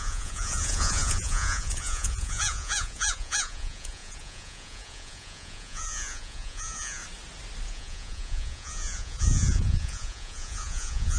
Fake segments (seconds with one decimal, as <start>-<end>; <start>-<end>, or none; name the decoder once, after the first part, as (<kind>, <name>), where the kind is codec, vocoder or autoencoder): 0.0-7.0 (vocoder, Vocos); 7.7-11.2